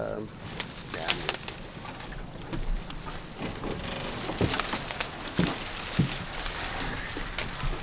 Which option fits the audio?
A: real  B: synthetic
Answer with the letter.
A